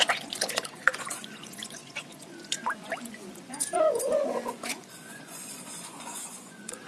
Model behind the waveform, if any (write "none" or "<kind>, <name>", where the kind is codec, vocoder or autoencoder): vocoder, Vocos